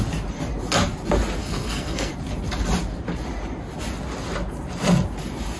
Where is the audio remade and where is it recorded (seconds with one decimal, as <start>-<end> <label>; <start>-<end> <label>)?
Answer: 0.0-1.4 recorded; 1.4-2.1 remade; 2.1-5.6 recorded